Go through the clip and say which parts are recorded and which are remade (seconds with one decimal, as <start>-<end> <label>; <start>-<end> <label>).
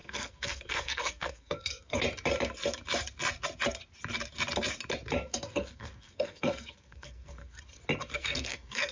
0.0-2.0 remade; 2.0-5.3 recorded; 5.3-7.6 remade; 7.6-8.1 recorded; 8.1-8.9 remade